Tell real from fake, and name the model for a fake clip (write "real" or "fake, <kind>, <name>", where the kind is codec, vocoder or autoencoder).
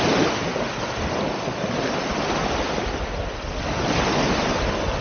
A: real